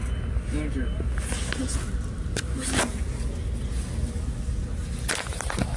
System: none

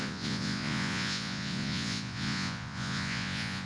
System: vocoder, Vocos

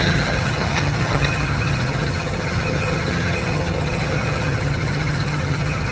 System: vocoder, HiFi-GAN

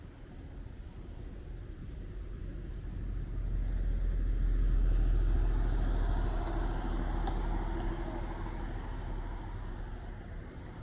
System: none